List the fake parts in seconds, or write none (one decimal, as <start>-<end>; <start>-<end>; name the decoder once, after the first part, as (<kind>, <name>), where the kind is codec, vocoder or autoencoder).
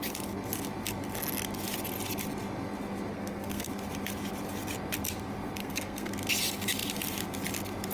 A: 3.1-3.7 (codec, SNAC); 5.6-6.1